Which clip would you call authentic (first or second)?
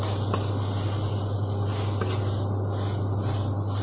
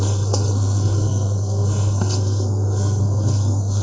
first